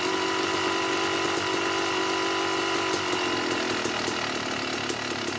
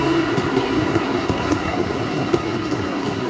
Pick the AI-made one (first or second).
second